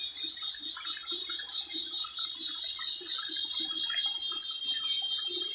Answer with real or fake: real